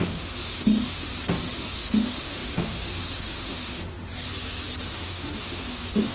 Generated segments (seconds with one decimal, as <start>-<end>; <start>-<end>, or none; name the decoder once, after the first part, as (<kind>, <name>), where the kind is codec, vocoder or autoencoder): 0.0-1.1 (autoencoder, DAC-VAE); 1.7-4.1; 4.9-6.1